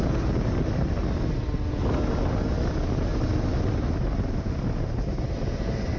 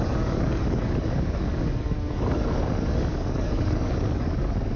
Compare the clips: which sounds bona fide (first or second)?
first